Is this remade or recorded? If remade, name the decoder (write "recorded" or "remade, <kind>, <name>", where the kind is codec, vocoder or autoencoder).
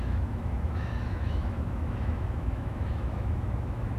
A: remade, autoencoder, DAC-VAE